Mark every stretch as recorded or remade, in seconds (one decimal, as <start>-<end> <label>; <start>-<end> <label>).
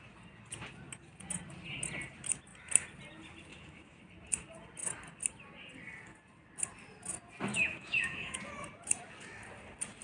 0.0-3.5 recorded; 3.5-4.0 remade; 4.0-7.5 recorded; 7.5-8.4 remade; 8.4-10.0 recorded